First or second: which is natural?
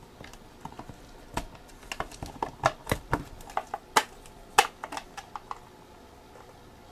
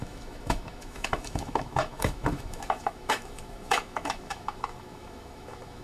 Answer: first